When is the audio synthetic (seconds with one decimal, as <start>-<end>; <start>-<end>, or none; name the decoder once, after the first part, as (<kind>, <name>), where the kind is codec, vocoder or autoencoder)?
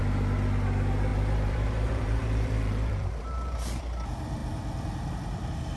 1.1-3.8 (vocoder, BigVGAN v2)